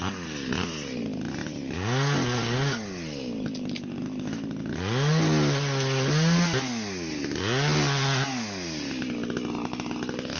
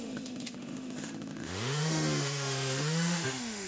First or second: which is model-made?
second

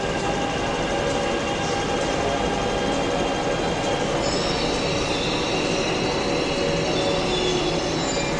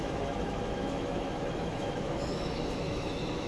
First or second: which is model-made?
second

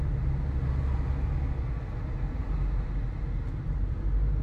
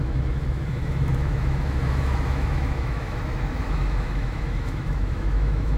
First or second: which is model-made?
second